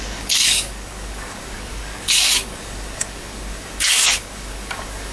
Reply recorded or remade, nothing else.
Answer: remade